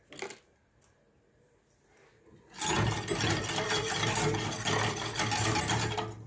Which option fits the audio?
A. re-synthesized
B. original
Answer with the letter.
B